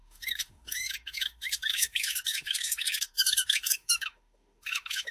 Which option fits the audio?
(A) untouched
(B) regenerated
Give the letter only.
B